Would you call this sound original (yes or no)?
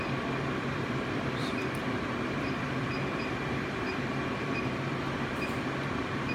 no